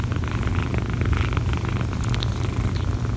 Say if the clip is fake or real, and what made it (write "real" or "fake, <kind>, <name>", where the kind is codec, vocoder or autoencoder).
real